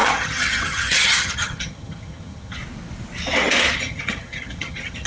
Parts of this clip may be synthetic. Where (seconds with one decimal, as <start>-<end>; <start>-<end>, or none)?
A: 0.0-2.6; 3.8-5.1